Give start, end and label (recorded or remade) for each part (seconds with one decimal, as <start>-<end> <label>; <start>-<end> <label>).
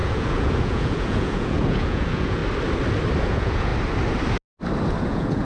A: 0.0-2.4 remade; 2.4-3.2 recorded; 3.2-3.7 remade; 3.7-5.0 recorded; 5.0-5.4 remade